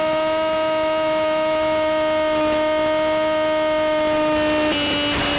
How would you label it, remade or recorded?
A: recorded